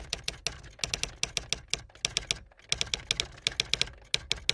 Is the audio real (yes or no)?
yes